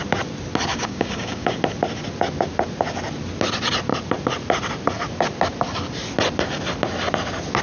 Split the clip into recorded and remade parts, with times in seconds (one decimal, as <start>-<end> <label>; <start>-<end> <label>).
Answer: 0.0-0.7 recorded; 0.7-1.6 remade; 1.6-7.6 recorded